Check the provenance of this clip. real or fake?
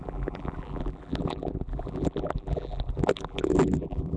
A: fake